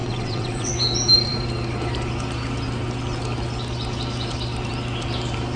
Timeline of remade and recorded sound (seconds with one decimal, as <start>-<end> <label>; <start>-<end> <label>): 0.0-0.7 remade; 0.7-5.6 recorded